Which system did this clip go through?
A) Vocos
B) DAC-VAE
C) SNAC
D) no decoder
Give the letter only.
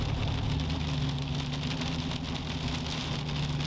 D